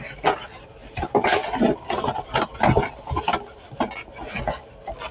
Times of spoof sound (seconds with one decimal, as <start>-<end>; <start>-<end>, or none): none